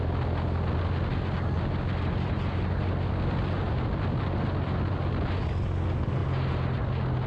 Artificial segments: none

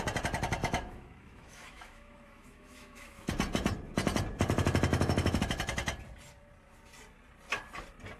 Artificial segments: 0.6-3.3; 4.9-5.4

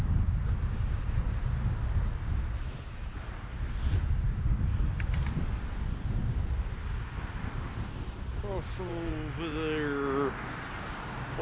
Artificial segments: none

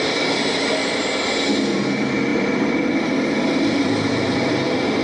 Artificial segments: 2.3-4.5